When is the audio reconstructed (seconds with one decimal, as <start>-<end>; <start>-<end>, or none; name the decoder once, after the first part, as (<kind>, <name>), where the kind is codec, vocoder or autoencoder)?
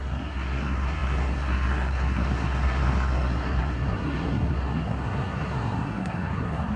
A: 0.0-6.8 (codec, SNAC)